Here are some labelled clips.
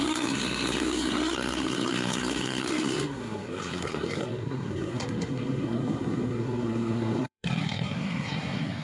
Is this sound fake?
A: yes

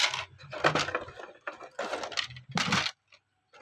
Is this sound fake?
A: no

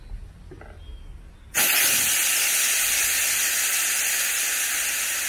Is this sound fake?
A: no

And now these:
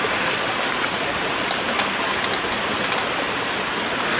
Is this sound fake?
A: no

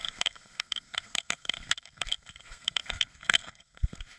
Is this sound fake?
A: yes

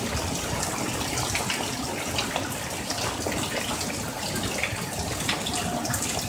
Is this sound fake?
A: no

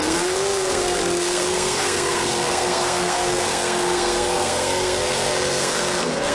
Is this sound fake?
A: yes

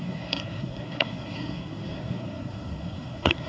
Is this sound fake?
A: yes